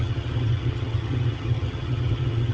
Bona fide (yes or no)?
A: no